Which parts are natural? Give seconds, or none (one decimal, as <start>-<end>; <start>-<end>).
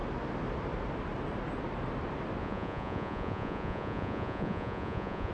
0.0-2.4